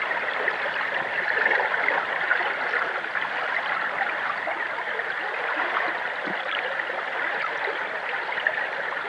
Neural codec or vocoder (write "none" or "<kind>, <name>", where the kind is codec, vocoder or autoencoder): none